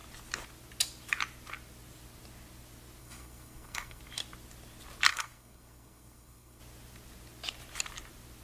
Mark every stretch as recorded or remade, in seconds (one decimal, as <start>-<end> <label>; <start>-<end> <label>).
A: 0.0-3.0 recorded; 3.0-4.0 remade; 4.0-5.1 recorded; 5.1-6.6 remade; 6.6-8.4 recorded

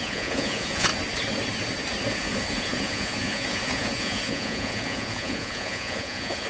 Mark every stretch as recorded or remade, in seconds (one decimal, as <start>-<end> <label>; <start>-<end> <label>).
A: 0.0-0.9 remade; 0.9-2.1 recorded; 2.1-6.5 remade

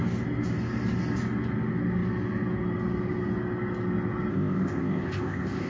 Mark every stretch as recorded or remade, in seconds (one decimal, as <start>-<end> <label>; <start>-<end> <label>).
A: 0.0-4.3 recorded; 4.3-5.7 remade

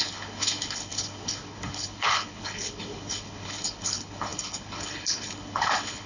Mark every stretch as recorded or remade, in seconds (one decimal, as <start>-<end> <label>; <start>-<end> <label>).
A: 0.0-6.1 remade

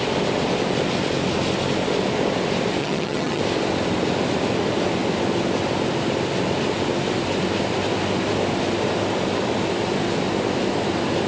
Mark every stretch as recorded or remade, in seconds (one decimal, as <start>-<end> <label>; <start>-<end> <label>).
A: 0.0-2.8 recorded; 2.8-3.4 remade; 3.4-11.3 recorded

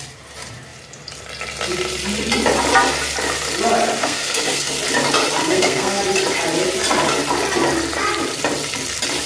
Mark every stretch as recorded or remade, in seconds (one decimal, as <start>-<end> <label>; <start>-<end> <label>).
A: 0.0-4.0 recorded; 4.0-4.8 remade; 4.8-5.4 recorded; 5.4-6.0 remade; 6.0-9.3 recorded